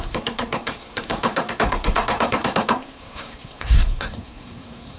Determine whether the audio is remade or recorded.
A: remade